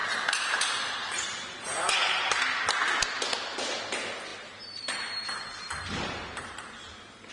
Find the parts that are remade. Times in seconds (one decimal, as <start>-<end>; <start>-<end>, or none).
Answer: 0.0-2.4; 4.3-7.3